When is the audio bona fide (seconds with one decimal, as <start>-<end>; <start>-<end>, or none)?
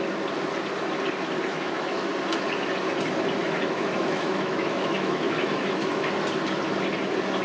0.0-1.5; 2.1-3.4; 6.1-7.4